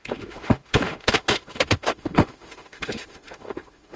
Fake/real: fake